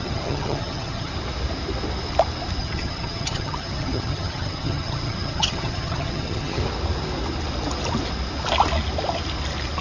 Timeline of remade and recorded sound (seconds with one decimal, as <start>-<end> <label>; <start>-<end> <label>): 0.0-1.1 remade; 1.1-2.6 recorded; 2.6-6.6 remade; 6.6-9.8 recorded

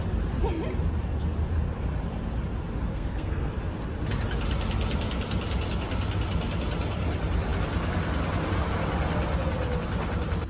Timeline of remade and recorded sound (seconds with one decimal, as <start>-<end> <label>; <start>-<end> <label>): 0.0-2.9 recorded; 2.9-3.5 remade; 3.5-10.5 recorded

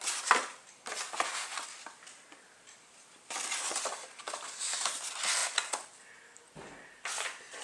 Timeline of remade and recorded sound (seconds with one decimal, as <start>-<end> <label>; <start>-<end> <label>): 0.0-7.6 recorded